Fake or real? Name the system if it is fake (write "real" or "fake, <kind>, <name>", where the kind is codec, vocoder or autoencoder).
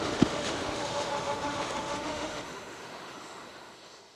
fake, autoencoder, DAC-VAE